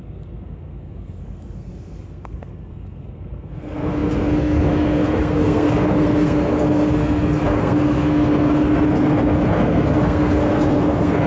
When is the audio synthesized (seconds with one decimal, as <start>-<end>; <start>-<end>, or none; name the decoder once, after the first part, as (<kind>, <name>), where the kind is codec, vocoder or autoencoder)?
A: 0.0-11.3 (codec, SNAC)